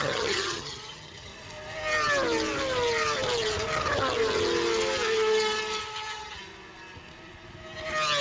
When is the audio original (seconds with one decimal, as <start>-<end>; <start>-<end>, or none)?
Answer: 1.3-5.8; 6.4-8.2

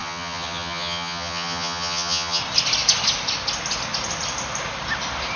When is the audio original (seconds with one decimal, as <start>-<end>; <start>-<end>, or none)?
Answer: 2.4-5.4

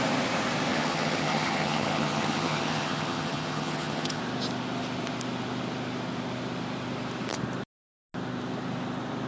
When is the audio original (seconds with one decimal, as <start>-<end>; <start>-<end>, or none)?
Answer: 0.0-0.7; 4.2-9.3

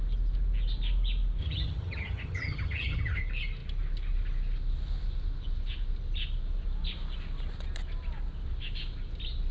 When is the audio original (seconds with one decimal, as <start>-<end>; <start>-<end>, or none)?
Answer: 0.0-1.4; 3.2-9.5

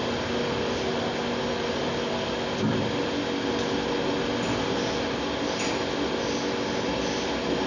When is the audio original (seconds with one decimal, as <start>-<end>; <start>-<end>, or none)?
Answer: 0.0-7.7

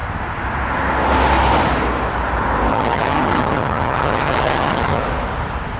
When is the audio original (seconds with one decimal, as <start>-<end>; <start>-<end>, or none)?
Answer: 0.0-2.7; 5.0-5.8